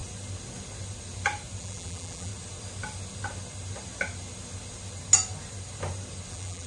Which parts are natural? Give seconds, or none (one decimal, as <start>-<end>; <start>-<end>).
0.0-1.6; 2.3-6.3